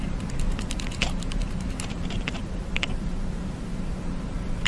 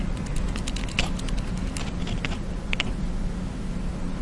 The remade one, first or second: first